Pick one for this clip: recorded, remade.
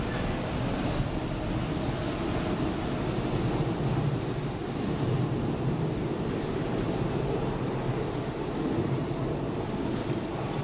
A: recorded